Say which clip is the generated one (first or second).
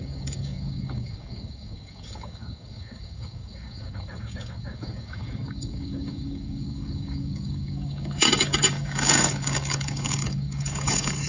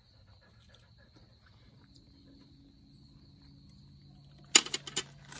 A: first